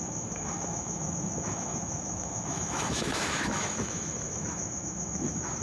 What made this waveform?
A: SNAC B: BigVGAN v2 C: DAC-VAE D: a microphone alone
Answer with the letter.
C